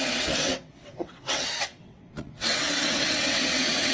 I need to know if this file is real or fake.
fake